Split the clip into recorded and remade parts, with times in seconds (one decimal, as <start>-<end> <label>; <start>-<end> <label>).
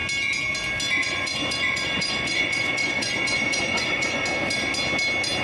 0.0-1.0 recorded; 1.0-4.2 remade; 4.2-5.4 recorded